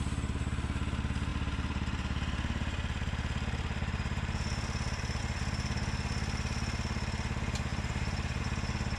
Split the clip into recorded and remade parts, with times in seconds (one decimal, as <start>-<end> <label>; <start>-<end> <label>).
0.0-1.3 recorded; 1.3-5.2 remade; 5.2-7.7 recorded; 7.7-8.4 remade; 8.4-9.0 recorded